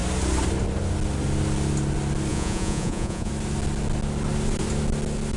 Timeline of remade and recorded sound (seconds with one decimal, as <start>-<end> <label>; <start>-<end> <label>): 0.0-2.3 recorded; 2.3-3.3 remade; 3.3-5.4 recorded